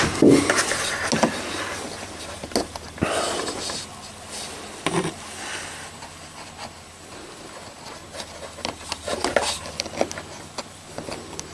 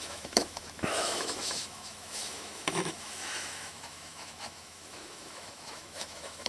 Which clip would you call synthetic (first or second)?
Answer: second